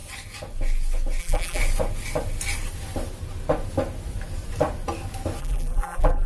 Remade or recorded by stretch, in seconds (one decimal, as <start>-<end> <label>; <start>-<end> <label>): 0.0-1.2 recorded; 1.2-1.6 remade; 1.6-5.4 recorded; 5.4-6.3 remade